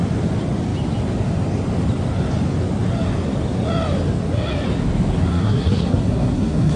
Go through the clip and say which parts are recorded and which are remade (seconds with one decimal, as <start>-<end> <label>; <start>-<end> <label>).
0.0-5.3 recorded; 5.3-6.8 remade